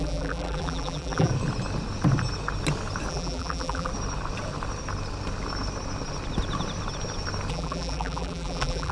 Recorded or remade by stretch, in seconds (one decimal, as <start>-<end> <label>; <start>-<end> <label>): 0.0-1.3 remade; 1.3-3.1 recorded; 3.1-3.9 remade; 3.9-7.5 recorded; 7.5-8.9 remade